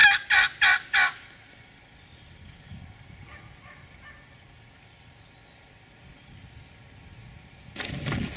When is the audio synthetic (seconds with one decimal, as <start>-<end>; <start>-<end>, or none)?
none